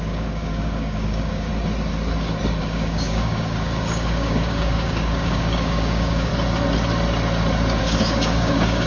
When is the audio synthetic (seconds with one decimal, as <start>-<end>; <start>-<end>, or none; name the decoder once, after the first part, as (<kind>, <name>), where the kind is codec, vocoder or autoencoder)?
0.0-1.5 (codec, DAC); 2.6-6.3; 7.8-8.9